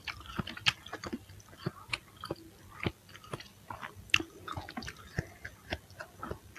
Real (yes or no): yes